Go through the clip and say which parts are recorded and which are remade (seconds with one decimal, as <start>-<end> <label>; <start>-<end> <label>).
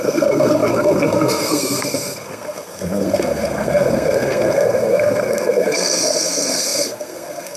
0.0-7.6 remade